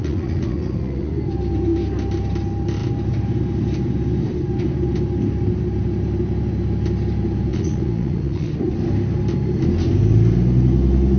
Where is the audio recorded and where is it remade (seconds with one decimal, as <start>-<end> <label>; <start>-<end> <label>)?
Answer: 0.0-1.1 remade; 1.1-7.5 recorded; 7.5-8.5 remade; 8.5-11.2 recorded